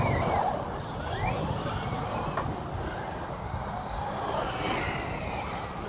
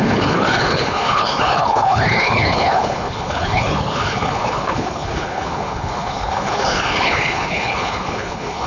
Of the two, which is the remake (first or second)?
second